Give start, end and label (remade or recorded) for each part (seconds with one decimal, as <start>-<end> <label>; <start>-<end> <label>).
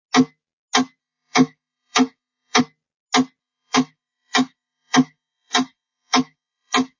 0.0-1.0 recorded; 1.0-2.6 remade; 2.6-3.4 recorded; 3.4-7.0 remade